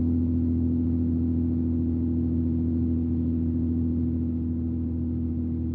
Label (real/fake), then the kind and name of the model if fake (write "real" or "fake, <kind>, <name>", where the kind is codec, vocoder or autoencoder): real